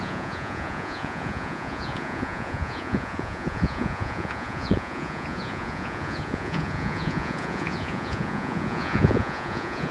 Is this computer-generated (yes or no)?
yes